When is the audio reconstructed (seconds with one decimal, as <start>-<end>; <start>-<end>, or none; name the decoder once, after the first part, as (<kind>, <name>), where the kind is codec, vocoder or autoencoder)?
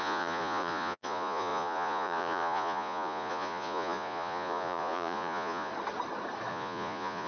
0.0-5.7 (vocoder, Vocos); 6.5-7.3